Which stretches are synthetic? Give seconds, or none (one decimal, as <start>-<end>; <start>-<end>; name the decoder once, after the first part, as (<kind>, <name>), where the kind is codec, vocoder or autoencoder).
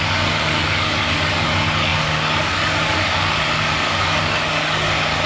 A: 0.0-5.3 (codec, DAC)